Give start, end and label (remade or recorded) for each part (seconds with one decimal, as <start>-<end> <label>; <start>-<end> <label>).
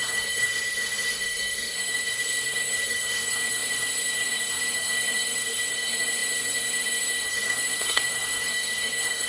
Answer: 0.0-9.3 remade